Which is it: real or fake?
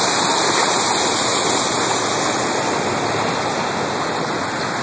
real